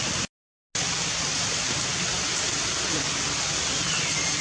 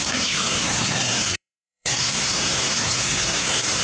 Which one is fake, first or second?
second